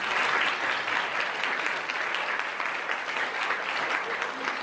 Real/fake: real